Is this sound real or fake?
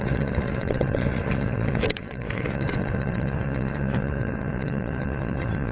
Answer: fake